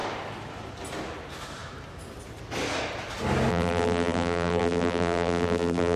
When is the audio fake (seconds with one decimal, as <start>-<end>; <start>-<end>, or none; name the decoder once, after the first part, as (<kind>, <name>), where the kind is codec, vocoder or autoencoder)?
3.5-6.0 (vocoder, BigVGAN v2)